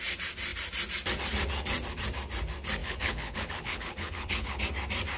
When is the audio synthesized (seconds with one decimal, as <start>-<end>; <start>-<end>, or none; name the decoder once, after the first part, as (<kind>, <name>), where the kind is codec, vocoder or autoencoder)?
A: 2.8-4.6 (codec, HILCodec)